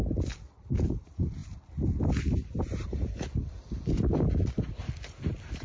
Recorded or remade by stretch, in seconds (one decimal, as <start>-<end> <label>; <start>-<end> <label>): 0.0-5.6 recorded